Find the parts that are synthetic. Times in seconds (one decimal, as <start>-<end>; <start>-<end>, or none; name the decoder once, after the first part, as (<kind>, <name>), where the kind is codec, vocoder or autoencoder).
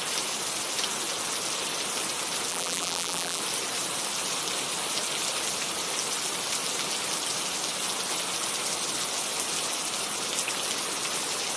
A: 2.5-3.4 (vocoder, BigVGAN v2)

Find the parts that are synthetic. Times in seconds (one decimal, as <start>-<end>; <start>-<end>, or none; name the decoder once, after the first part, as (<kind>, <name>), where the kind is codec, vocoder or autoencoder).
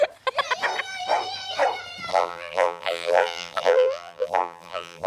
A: 2.1-5.1 (vocoder, BigVGAN v2)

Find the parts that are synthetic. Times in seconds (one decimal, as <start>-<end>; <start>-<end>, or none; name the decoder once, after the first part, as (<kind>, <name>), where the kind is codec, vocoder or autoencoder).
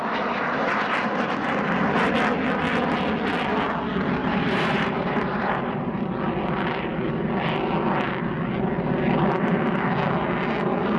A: 4.2-6.1 (vocoder, BigVGAN v2)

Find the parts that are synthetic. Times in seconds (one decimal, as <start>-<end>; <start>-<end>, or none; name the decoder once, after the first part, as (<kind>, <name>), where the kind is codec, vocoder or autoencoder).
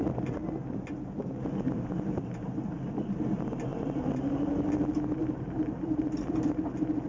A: 3.7-4.3 (vocoder, BigVGAN v2); 5.2-6.5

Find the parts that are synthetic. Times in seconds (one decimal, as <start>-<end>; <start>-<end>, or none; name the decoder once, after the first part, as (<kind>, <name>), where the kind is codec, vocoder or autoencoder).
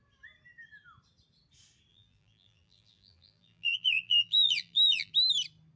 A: 1.9-5.1 (vocoder, BigVGAN v2)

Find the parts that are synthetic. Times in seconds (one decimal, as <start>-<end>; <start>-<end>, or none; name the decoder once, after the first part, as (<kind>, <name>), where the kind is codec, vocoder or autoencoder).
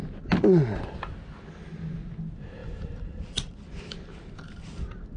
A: 2.6-3.2 (vocoder, BigVGAN v2)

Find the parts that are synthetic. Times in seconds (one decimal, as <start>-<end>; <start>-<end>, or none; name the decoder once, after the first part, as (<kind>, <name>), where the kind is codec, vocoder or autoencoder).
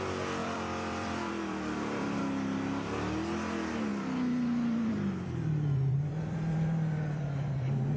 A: 0.4-2.2 (vocoder, BigVGAN v2); 3.9-8.0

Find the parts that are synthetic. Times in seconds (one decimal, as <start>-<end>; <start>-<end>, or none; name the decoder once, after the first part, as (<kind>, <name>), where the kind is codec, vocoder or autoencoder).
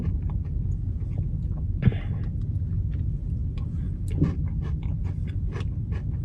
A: none